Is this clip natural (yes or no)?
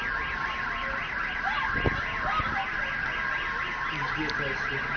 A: yes